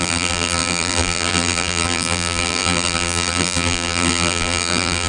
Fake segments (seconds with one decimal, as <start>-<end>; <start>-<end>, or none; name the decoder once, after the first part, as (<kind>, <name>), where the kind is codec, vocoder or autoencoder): 0.0-5.1 (vocoder, BigVGAN v2)